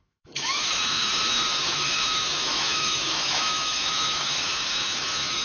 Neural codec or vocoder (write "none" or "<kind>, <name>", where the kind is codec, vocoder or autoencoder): autoencoder, DAC-VAE